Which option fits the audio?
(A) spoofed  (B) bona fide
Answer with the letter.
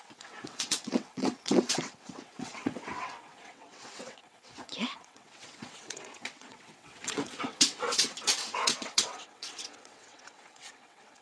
A